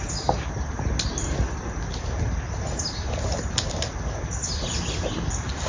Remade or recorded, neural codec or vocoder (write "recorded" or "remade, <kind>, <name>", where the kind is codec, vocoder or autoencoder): recorded